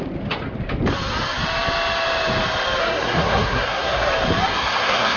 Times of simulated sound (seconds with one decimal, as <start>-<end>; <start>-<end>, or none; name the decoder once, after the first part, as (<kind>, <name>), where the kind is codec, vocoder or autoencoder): 2.8-4.1 (codec, SNAC); 4.5-5.2